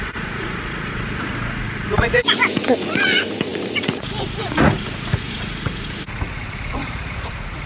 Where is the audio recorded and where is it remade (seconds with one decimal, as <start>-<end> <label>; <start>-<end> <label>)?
0.0-7.7 remade